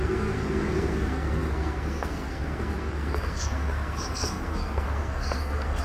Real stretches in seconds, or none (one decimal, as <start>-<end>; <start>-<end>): none